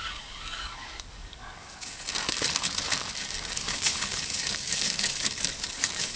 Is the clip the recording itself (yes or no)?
no